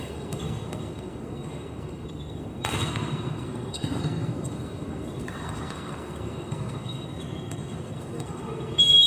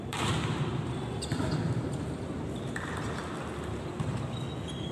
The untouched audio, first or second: second